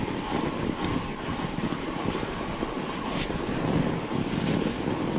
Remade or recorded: recorded